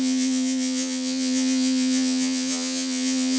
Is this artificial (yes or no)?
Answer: yes